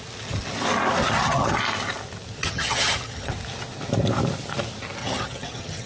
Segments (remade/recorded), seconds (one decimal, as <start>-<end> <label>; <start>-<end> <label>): 0.0-1.0 recorded; 1.0-1.6 remade; 1.6-2.4 recorded; 2.4-3.3 remade; 3.3-5.0 recorded; 5.0-5.9 remade